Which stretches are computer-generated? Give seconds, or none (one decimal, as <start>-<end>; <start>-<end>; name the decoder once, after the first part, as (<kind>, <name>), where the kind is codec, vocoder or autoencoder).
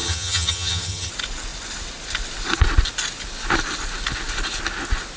0.0-1.1 (vocoder, HiFi-GAN)